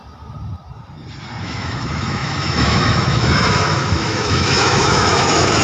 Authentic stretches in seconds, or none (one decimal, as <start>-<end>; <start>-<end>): 0.0-1.4